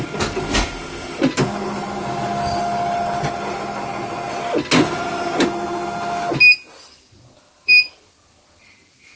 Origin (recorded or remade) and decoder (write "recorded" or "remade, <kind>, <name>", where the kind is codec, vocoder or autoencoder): recorded